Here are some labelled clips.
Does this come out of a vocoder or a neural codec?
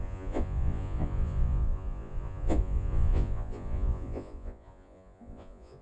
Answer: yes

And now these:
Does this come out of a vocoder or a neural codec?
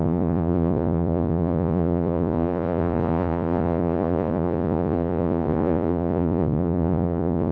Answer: yes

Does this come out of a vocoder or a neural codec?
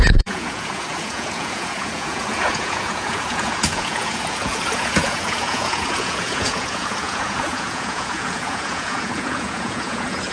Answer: yes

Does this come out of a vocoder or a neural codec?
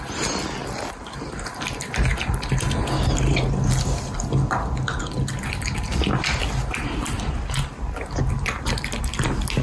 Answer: no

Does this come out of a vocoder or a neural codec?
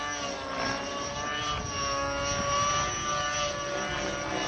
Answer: no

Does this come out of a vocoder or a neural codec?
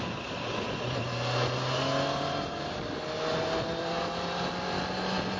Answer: no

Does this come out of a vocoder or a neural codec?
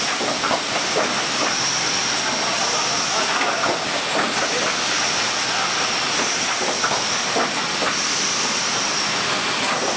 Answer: no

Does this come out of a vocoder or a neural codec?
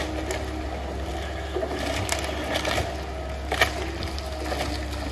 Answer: no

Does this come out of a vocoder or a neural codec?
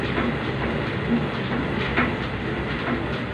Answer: no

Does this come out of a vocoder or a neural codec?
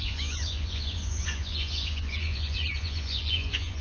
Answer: yes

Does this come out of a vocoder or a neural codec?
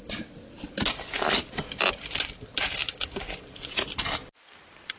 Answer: no